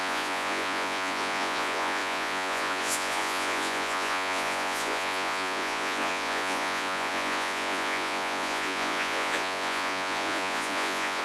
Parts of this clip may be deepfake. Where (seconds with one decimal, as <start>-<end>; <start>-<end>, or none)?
0.0-11.2

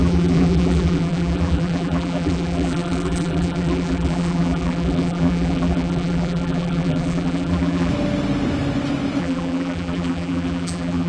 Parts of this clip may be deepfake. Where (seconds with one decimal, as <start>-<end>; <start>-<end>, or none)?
0.0-7.9; 9.2-11.1

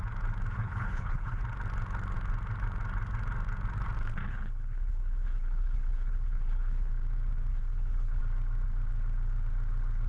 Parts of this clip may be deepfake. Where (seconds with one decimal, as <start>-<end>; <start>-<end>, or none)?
0.5-1.4; 4.3-6.9; 7.5-8.2

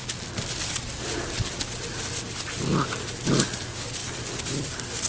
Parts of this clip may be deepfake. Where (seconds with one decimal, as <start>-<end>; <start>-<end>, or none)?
4.0-5.1